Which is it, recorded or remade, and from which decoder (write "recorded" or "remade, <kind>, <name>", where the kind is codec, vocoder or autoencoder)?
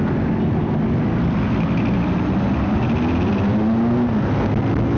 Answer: recorded